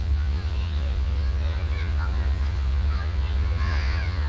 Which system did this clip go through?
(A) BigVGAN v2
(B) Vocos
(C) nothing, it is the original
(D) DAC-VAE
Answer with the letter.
B